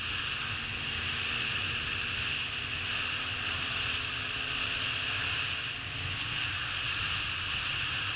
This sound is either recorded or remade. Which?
recorded